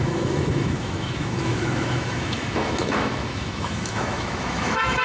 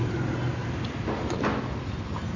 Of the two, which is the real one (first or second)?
second